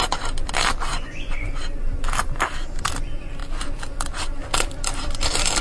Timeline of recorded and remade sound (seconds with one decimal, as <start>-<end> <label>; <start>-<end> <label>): 0.0-0.9 recorded; 0.9-1.5 remade; 1.5-5.6 recorded